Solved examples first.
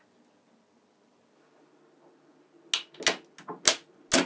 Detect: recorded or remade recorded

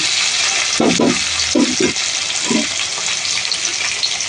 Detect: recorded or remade recorded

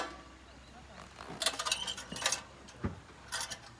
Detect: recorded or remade recorded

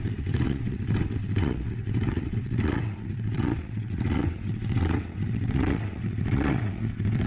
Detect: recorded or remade remade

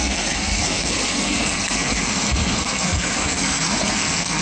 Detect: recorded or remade remade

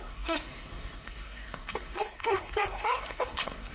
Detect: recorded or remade remade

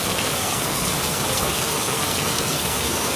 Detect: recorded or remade remade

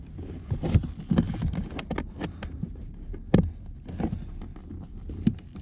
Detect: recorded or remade recorded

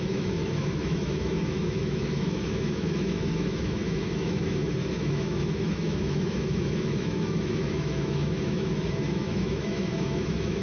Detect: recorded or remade remade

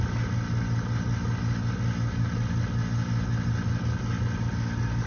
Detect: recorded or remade recorded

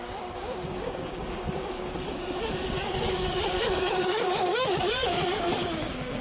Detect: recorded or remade remade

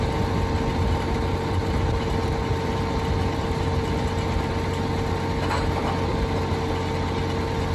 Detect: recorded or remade recorded